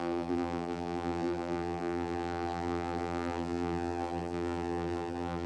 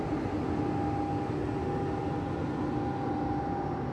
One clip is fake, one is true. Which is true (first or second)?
second